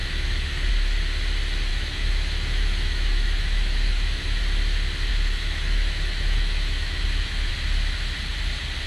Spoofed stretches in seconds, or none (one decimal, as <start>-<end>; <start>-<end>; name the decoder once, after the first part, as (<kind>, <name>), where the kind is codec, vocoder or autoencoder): 0.0-0.7 (autoencoder, DAC-VAE); 1.7-4.4; 5.1-7.5